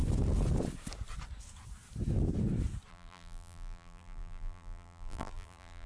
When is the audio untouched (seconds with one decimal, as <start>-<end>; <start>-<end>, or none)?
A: 0.0-2.9